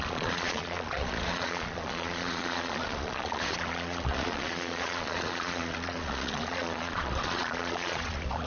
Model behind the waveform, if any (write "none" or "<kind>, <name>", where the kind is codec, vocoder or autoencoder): vocoder, Vocos